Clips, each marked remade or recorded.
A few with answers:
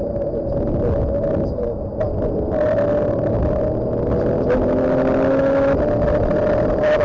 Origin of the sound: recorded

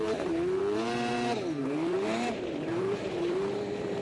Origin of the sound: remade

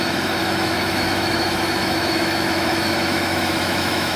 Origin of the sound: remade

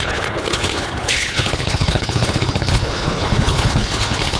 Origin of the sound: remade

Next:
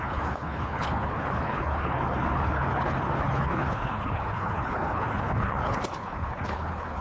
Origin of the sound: remade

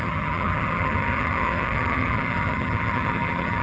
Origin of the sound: remade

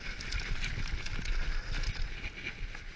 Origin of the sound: recorded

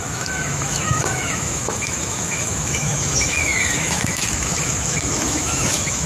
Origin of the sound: remade